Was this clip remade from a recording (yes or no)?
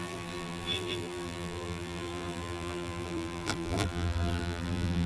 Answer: yes